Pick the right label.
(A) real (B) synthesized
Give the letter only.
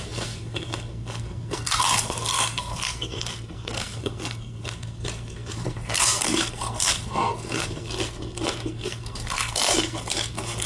B